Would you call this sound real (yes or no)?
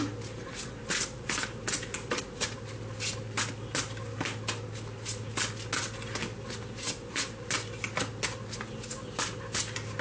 yes